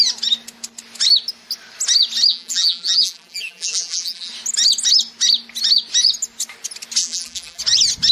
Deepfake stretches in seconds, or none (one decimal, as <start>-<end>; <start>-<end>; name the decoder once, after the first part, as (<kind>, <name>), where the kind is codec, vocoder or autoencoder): 2.3-4.3 (vocoder, BigVGAN v2); 7.0-7.6